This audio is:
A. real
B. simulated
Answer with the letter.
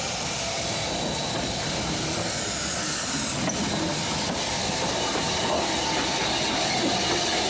A